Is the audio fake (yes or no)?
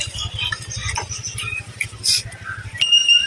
no